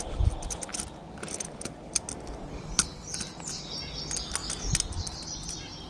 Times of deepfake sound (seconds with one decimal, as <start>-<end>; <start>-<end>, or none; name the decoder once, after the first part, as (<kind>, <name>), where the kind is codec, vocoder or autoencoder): none